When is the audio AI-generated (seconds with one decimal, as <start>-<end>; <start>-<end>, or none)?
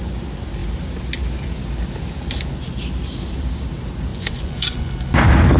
4.1-4.9